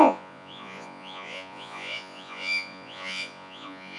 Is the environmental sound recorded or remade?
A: remade